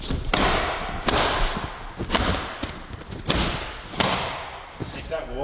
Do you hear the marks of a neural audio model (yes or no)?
no